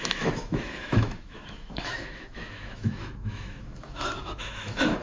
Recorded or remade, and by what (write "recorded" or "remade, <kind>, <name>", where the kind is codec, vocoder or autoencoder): remade, autoencoder, DAC-VAE